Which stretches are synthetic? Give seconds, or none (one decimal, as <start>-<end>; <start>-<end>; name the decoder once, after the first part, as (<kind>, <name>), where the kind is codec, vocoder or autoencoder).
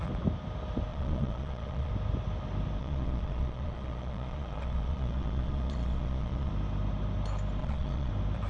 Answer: 0.9-1.9 (vocoder, Vocos); 2.8-6.5; 7.6-8.1